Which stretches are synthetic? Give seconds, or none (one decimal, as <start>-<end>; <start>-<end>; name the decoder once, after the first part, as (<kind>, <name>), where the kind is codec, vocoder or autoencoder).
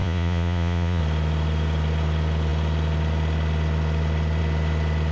0.0-1.0 (vocoder, Vocos)